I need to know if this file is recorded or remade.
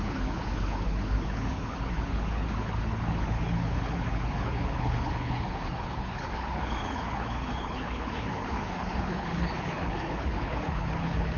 remade